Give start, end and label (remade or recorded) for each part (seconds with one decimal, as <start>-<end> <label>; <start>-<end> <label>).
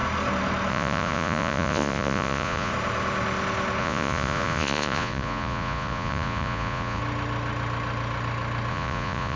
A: 0.0-0.7 recorded; 0.7-2.7 remade; 2.7-3.8 recorded; 3.8-7.0 remade; 7.0-8.7 recorded; 8.7-9.4 remade